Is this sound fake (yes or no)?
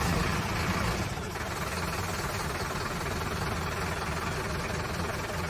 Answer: no